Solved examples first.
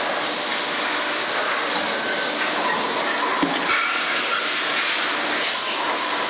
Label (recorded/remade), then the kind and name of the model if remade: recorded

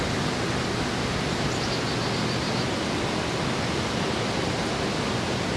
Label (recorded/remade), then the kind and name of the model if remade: recorded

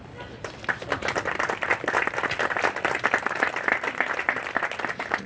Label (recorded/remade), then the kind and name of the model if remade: recorded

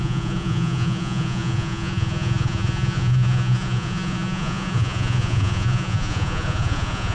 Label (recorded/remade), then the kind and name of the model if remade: remade, vocoder, Vocos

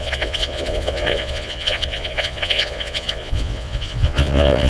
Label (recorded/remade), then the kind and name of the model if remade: remade, vocoder, Vocos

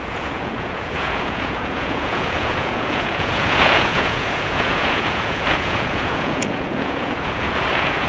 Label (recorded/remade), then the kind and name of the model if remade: remade, vocoder, Vocos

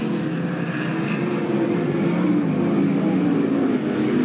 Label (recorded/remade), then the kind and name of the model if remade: recorded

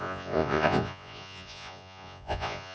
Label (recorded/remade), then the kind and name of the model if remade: remade, vocoder, Vocos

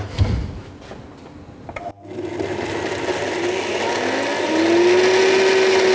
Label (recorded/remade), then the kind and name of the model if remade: recorded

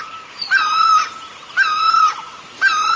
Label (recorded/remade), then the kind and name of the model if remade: recorded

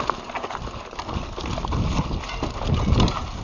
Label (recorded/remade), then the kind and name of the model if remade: recorded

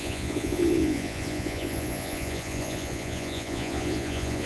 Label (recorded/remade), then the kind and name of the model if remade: remade, vocoder, Vocos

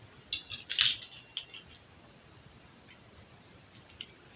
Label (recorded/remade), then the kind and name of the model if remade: recorded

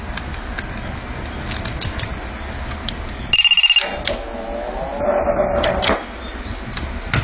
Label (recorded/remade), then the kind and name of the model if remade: recorded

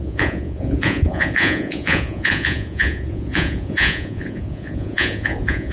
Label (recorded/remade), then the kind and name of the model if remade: remade, vocoder, Vocos